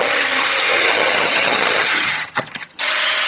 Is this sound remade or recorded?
remade